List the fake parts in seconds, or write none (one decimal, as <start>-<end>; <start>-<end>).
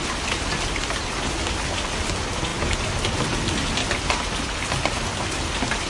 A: none